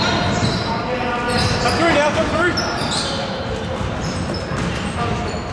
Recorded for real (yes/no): yes